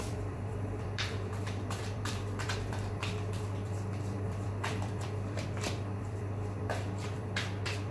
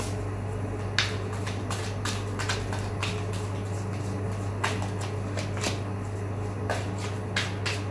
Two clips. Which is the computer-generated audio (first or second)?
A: first